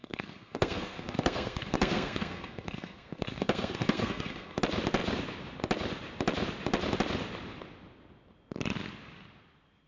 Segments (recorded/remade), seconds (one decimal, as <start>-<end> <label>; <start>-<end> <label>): 0.0-4.6 remade; 4.6-9.9 recorded